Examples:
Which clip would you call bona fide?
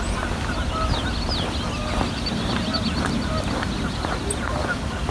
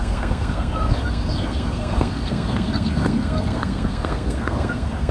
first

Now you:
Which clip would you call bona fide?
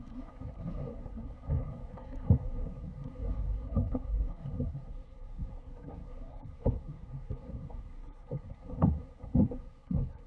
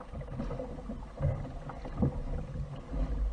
second